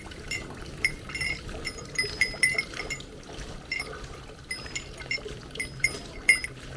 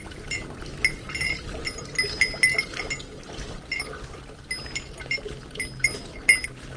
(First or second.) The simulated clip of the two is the first